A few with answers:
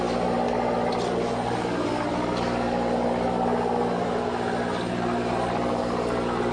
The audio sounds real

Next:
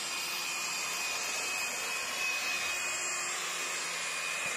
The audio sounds real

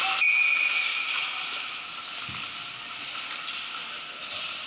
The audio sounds real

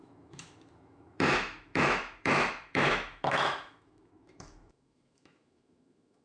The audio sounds fake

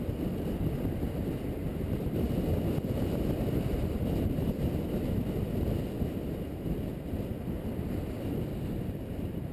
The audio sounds real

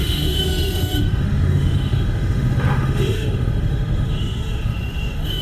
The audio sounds fake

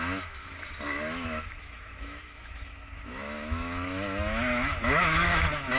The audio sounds fake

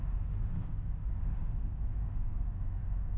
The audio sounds fake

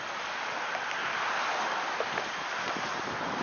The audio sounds real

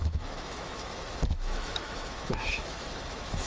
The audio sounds fake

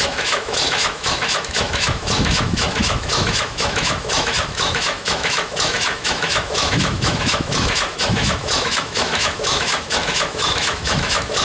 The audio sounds fake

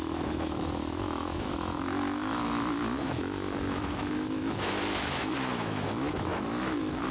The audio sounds fake